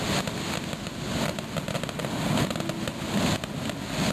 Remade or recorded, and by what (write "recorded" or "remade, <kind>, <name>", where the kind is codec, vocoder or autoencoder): recorded